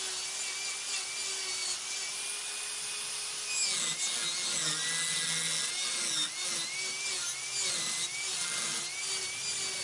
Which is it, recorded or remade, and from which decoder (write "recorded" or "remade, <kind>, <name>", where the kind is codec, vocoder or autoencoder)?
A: recorded